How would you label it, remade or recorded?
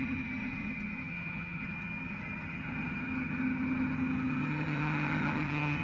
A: remade